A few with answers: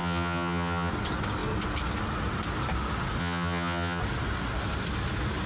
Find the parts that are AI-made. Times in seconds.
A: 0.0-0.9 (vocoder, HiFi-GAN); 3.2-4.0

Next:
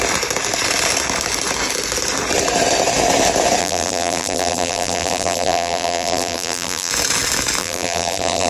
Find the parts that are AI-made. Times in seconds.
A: 3.6-6.9 (vocoder, BigVGAN v2); 7.6-8.5